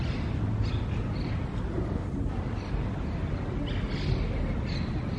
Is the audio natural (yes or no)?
yes